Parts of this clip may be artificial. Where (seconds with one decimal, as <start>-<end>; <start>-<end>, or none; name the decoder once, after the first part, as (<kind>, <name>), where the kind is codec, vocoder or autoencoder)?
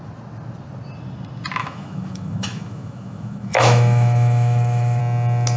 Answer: 1.6-5.0 (autoencoder, DAC-VAE)